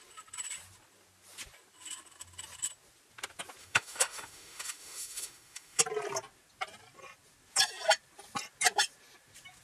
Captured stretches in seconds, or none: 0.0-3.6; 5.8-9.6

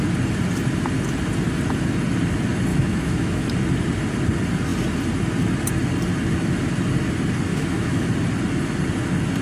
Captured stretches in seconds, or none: 0.0-2.7; 3.5-7.5; 8.1-9.4

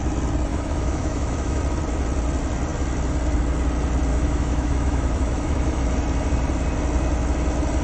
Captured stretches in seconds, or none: 0.0-0.5; 1.6-4.1; 5.8-7.8